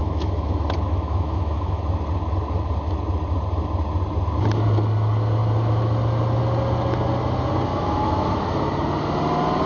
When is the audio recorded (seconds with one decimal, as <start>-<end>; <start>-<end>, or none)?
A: 1.8-7.7; 8.4-9.7